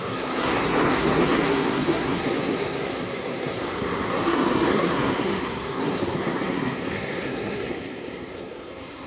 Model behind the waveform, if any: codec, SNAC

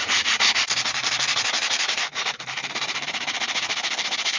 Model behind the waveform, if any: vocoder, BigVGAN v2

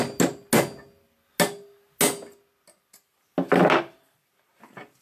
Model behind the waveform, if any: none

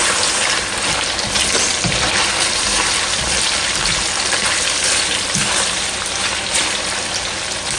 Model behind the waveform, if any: none